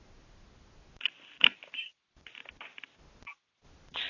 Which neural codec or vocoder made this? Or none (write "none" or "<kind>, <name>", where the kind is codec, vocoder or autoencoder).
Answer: none